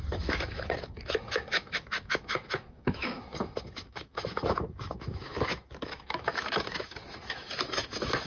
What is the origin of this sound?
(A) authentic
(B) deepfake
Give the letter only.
B